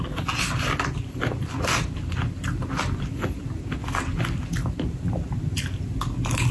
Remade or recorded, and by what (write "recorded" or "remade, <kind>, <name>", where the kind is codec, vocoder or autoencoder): recorded